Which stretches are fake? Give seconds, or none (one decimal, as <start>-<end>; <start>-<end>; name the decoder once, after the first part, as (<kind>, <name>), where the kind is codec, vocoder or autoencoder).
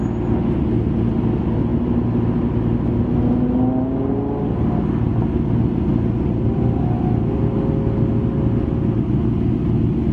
none